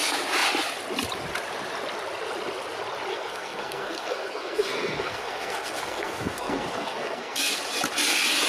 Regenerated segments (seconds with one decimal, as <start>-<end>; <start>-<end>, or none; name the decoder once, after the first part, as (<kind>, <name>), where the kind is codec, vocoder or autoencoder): 3.1-7.6 (codec, SNAC)